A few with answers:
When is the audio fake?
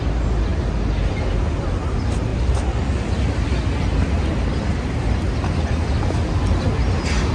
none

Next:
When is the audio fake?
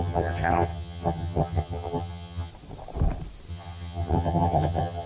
0.0-2.5 (vocoder, HiFi-GAN); 3.5-5.1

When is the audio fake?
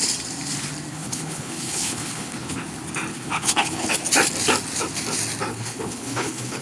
0.9-2.6 (codec, HILCodec); 3.1-3.9; 5.5-6.6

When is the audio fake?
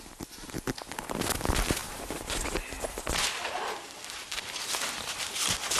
1.8-5.3 (vocoder, BigVGAN v2)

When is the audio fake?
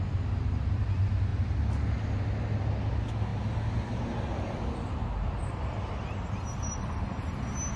none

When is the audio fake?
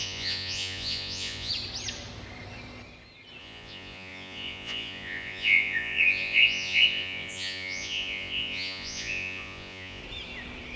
0.0-1.5 (vocoder, Vocos); 3.4-10.0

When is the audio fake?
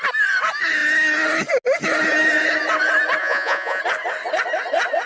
3.2-3.8 (vocoder, Vocos)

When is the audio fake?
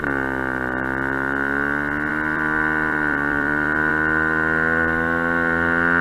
2.1-3.9 (vocoder, BigVGAN v2)